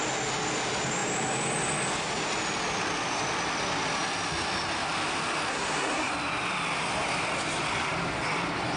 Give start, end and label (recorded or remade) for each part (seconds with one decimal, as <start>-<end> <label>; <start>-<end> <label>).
0.0-5.5 recorded; 5.5-6.1 remade; 6.1-8.8 recorded